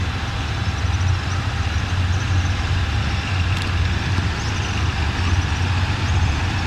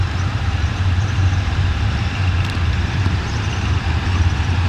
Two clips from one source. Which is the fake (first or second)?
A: second